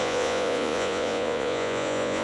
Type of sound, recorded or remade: remade